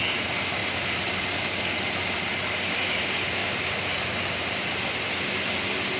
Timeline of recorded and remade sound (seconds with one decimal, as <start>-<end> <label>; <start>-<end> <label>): 0.0-3.4 recorded; 3.4-4.0 remade; 4.0-6.0 recorded